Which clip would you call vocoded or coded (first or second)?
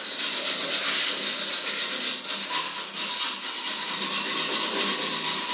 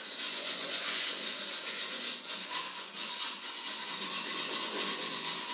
second